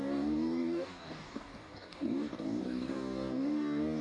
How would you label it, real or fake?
fake